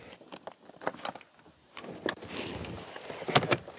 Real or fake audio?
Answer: real